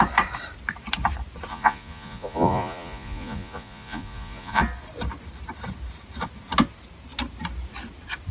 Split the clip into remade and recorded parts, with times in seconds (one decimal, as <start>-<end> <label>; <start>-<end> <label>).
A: 0.0-1.5 recorded; 1.5-4.6 remade; 4.6-8.3 recorded